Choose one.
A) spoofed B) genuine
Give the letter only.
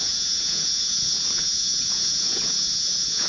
A